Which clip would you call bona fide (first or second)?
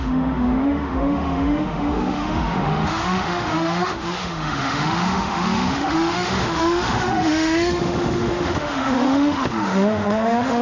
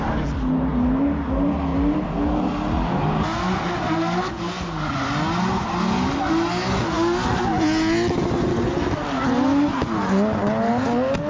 second